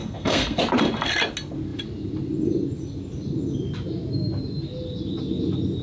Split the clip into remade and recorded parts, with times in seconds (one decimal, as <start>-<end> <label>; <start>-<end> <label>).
0.0-0.6 remade; 0.6-5.8 recorded